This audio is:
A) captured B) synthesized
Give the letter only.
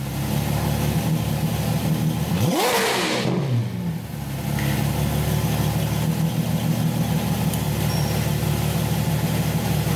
A